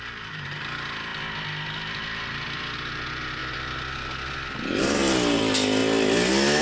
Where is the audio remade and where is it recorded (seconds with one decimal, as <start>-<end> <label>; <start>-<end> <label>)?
0.0-1.1 remade; 1.1-2.2 recorded; 2.2-3.4 remade; 3.4-4.8 recorded; 4.8-5.8 remade; 5.8-6.6 recorded